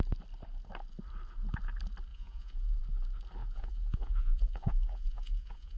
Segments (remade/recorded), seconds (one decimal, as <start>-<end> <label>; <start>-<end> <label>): 0.0-2.1 recorded; 2.1-2.8 remade; 2.8-3.4 recorded; 3.4-5.8 remade